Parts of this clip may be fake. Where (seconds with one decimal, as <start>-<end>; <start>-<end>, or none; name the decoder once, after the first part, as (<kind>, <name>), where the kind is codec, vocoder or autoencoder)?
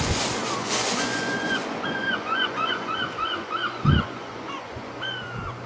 0.0-5.7 (vocoder, Vocos)